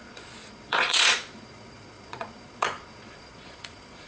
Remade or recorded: remade